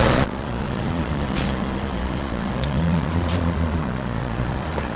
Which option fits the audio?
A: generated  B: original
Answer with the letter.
A